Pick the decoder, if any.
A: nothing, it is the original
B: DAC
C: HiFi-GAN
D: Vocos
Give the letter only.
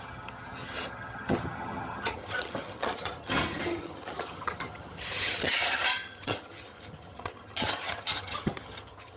C